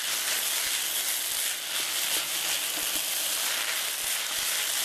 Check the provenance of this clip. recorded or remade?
recorded